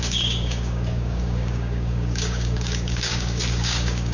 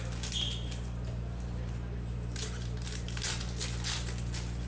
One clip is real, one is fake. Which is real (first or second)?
second